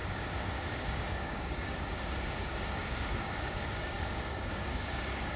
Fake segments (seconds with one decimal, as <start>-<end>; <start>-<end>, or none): 0.0-5.4